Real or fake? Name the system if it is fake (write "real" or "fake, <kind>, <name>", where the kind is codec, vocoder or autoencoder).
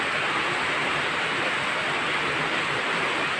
real